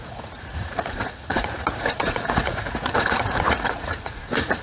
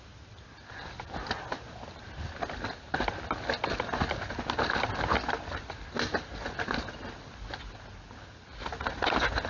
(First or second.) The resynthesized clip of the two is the first